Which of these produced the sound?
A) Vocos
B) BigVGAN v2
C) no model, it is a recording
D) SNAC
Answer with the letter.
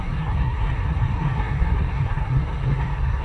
D